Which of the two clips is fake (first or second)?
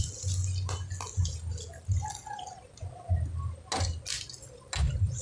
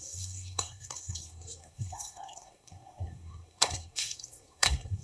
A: second